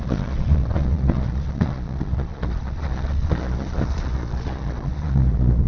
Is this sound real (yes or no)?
no